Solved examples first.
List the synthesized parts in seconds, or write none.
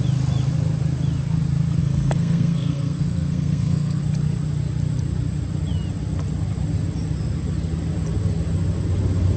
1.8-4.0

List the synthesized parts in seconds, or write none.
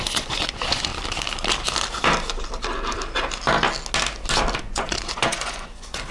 0.0-0.9; 4.6-6.1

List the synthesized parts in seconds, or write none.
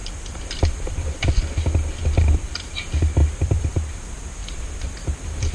0.0-1.3; 2.0-2.8; 3.2-3.7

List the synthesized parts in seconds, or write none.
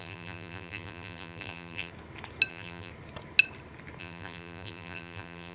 0.0-1.9; 2.5-2.9; 4.0-5.5